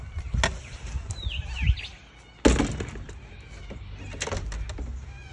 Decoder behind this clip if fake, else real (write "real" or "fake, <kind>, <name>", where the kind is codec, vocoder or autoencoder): real